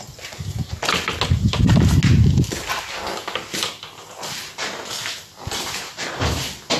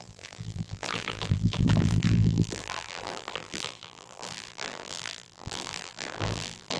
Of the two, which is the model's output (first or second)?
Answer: second